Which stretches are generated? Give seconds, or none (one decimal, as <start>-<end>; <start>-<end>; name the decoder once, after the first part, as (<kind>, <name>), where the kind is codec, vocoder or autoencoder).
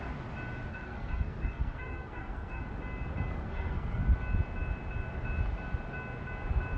0.7-2.6 (codec, SNAC); 3.3-4.0